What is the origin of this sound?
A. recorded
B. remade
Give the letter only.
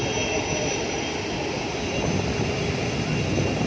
A